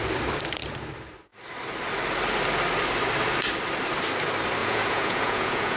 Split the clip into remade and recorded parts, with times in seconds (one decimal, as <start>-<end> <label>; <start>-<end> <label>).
0.0-4.6 recorded; 4.6-5.8 remade